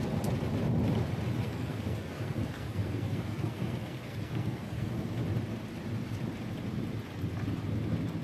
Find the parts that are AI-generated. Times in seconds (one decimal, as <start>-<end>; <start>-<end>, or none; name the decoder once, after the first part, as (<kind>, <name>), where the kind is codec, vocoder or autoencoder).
1.4-5.2 (codec, SNAC)